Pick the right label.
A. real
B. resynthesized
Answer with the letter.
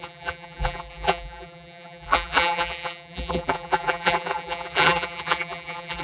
B